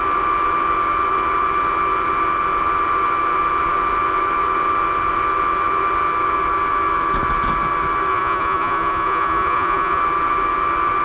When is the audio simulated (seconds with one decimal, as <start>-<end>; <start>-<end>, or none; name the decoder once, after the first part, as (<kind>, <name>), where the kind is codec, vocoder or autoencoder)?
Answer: 8.1-10.0 (vocoder, Vocos)